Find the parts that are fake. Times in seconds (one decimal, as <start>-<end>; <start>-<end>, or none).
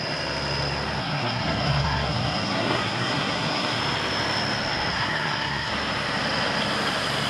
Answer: 1.0-3.8; 4.9-5.7